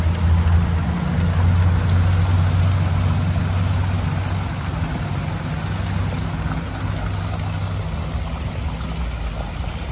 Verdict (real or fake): real